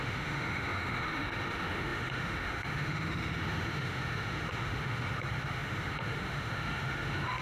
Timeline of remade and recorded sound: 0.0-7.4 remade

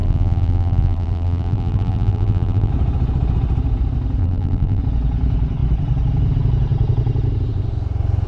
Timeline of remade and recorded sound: 0.0-2.7 remade; 2.7-4.2 recorded; 4.2-4.8 remade; 4.8-8.3 recorded

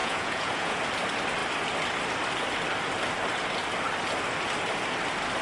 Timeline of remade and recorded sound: 0.0-0.8 remade; 0.8-5.4 recorded

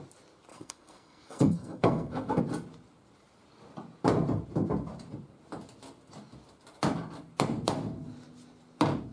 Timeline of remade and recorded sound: 0.0-0.5 recorded; 0.5-2.4 remade; 2.4-9.1 recorded

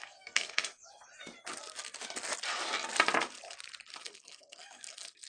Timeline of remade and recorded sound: 0.0-0.8 remade; 0.8-4.0 recorded; 4.0-5.3 remade

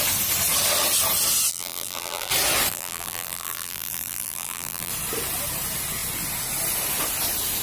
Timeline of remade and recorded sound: 0.0-1.5 recorded; 1.5-2.3 remade; 2.3-2.7 recorded; 2.7-4.9 remade; 4.9-7.6 recorded

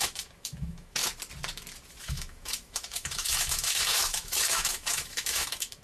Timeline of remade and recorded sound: 0.0-1.0 remade; 1.0-2.0 recorded; 2.0-5.8 remade

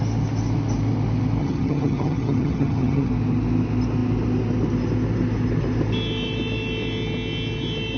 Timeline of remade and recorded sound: 0.0-1.4 recorded; 1.4-3.1 remade; 3.1-8.0 recorded